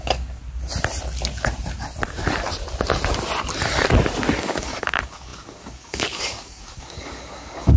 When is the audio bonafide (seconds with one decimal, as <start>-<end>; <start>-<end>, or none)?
0.4-4.4